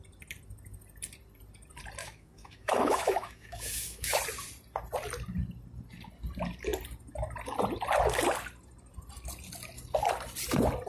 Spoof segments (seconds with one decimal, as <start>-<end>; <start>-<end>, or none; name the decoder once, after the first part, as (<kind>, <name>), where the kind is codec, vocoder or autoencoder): 2.0-4.2 (autoencoder, DAC-VAE)